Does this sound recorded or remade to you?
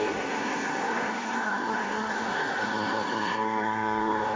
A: remade